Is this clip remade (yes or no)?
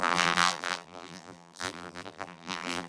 yes